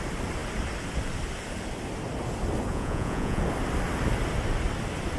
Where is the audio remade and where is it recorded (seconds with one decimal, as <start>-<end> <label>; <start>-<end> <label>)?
0.0-2.7 recorded; 2.7-3.4 remade; 3.4-5.2 recorded